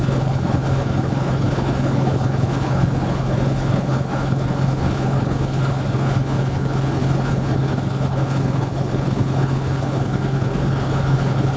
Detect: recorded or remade remade